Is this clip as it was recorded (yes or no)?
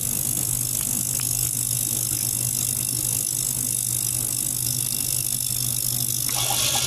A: yes